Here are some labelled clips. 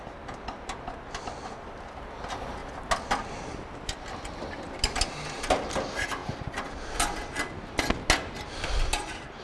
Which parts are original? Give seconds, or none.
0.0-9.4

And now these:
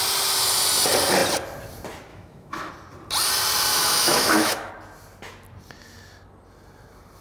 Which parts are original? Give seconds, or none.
0.0-2.1; 2.7-3.7; 4.7-7.2